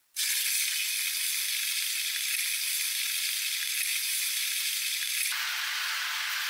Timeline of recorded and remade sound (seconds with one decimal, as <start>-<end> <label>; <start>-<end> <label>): 0.0-3.9 recorded; 3.9-4.7 remade; 4.7-6.5 recorded